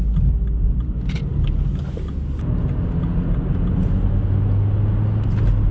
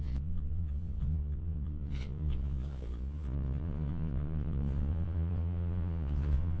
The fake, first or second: second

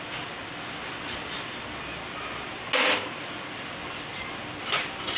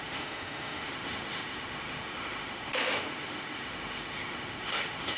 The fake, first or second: second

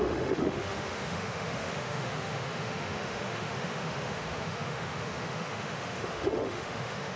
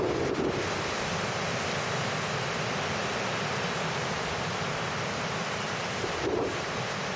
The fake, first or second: first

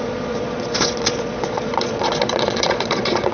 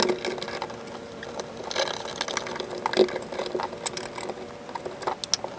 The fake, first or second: first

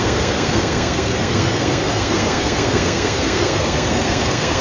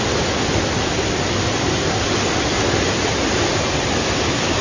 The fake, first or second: first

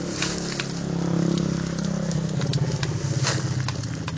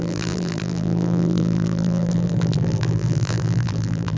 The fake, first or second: second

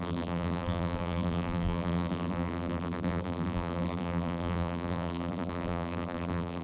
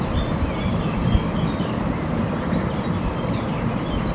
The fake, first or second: first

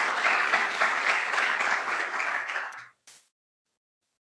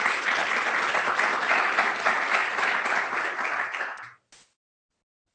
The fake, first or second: first